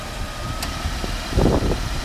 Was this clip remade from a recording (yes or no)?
no